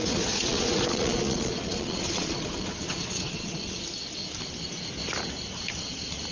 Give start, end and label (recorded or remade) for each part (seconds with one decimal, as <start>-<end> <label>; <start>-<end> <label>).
0.0-3.8 remade; 3.8-6.3 recorded

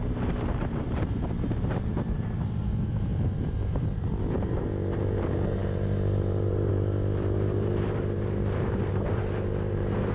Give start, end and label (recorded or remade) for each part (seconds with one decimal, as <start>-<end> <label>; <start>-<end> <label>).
0.0-10.1 remade

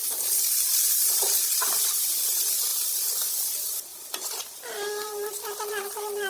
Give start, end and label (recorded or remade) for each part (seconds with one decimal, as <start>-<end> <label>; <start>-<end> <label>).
0.0-0.9 remade; 0.9-3.9 recorded; 3.9-5.8 remade; 5.8-6.3 recorded

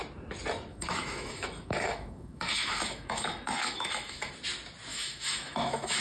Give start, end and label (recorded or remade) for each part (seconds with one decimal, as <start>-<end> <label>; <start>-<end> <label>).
0.0-0.7 recorded; 0.7-4.3 remade; 4.3-4.9 recorded; 4.9-6.0 remade

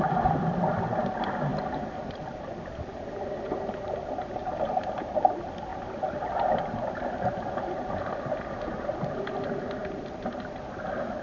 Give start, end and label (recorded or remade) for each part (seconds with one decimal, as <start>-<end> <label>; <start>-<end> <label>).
0.0-11.2 recorded

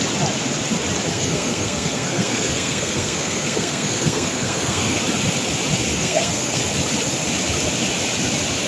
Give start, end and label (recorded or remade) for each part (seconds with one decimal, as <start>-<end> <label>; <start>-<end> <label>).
0.0-1.1 recorded; 1.1-5.0 remade; 5.0-5.9 recorded; 5.9-6.6 remade; 6.6-8.7 recorded

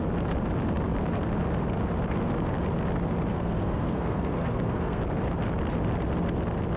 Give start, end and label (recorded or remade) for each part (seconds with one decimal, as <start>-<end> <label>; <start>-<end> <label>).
0.0-3.3 recorded; 3.3-5.0 remade; 5.0-6.8 recorded